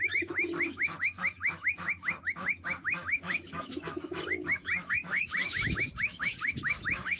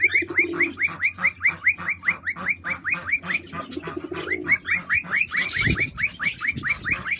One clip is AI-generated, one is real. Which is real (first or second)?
second